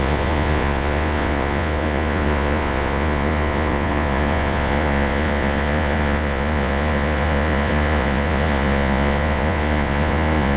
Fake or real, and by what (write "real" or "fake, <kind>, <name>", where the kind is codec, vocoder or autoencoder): fake, vocoder, Vocos